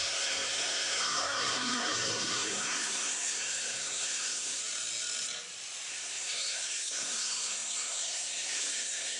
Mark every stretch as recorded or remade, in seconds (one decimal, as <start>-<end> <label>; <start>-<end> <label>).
0.0-4.6 remade; 4.6-5.9 recorded; 5.9-9.2 remade